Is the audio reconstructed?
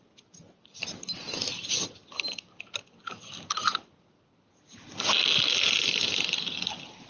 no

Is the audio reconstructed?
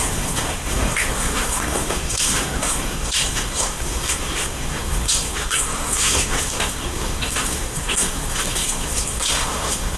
yes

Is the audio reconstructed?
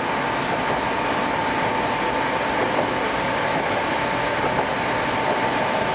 no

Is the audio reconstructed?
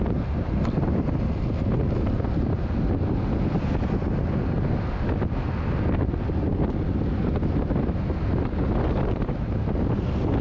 no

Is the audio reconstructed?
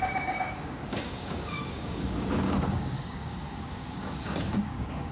yes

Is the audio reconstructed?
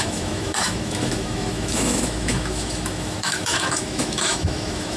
yes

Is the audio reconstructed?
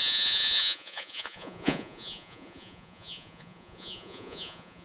yes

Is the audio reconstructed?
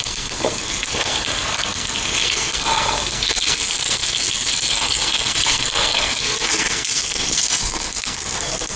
yes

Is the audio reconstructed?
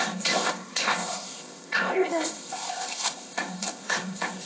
yes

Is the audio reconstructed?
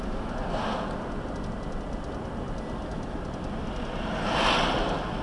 no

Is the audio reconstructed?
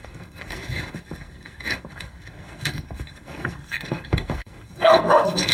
yes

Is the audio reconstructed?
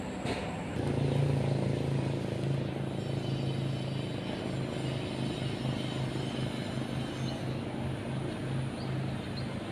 no